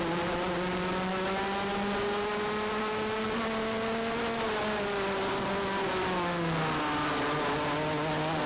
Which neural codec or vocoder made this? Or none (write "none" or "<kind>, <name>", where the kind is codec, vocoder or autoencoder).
none